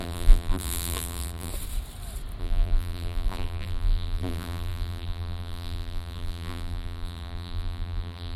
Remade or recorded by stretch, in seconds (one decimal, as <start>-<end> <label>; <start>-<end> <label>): 0.0-1.5 remade; 1.5-2.4 recorded; 2.4-8.4 remade